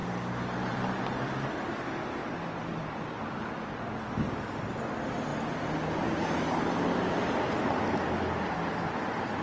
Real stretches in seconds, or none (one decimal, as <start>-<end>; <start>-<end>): 0.0-0.7; 2.2-4.7; 5.3-8.5